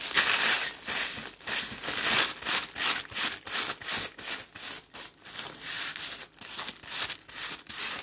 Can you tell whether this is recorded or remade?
recorded